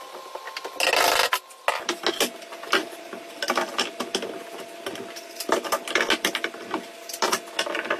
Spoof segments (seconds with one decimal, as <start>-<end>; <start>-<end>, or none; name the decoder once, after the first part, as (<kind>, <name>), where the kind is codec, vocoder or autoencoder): none